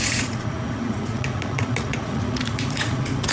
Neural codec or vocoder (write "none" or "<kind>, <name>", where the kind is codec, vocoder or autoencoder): vocoder, Vocos